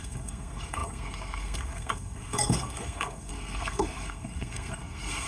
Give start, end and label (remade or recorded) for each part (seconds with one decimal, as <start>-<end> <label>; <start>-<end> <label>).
0.0-5.3 remade